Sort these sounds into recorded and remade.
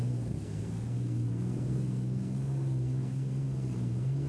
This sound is remade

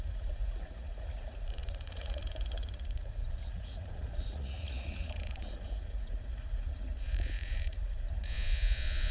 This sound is remade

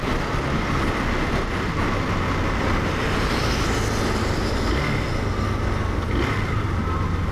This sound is recorded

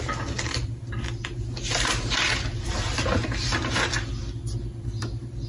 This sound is recorded